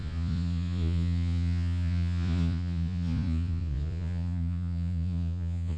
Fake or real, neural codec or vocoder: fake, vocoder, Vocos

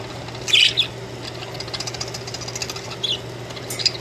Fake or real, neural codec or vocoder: real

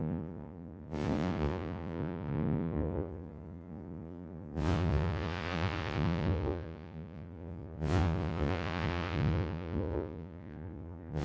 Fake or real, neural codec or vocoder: fake, vocoder, Vocos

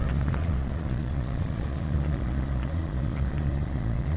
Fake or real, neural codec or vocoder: fake, vocoder, Vocos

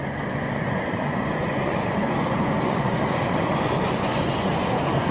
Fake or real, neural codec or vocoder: fake, vocoder, Vocos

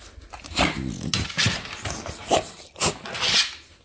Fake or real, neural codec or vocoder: real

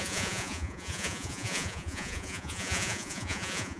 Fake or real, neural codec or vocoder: fake, vocoder, Vocos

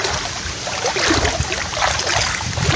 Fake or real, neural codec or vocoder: real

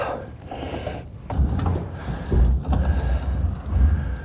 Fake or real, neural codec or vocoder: real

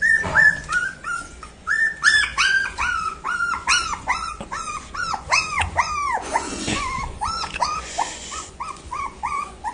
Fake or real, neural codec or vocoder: fake, vocoder, Vocos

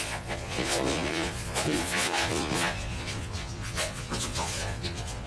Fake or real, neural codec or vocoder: fake, vocoder, Vocos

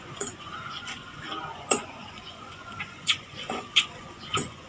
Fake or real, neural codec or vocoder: fake, vocoder, Vocos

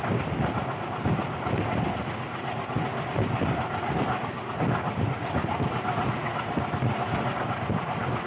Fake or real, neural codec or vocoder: real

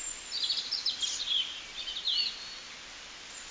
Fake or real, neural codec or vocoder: real